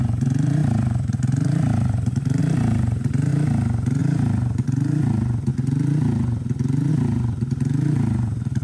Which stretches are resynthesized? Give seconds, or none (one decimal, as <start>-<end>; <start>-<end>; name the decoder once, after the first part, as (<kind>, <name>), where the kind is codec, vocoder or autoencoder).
0.0-3.3 (vocoder, BigVGAN v2); 4.0-5.5; 6.9-8.6